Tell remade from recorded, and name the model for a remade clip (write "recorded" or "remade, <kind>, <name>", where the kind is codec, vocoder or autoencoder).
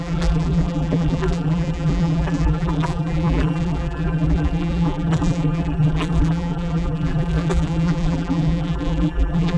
remade, vocoder, BigVGAN v2